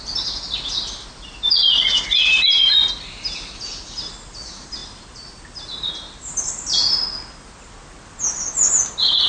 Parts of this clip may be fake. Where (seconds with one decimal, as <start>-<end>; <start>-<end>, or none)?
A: none